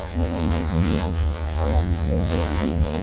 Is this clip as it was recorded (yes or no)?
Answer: no